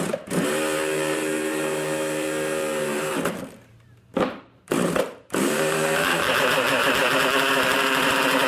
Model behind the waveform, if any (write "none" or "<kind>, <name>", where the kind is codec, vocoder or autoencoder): vocoder, BigVGAN v2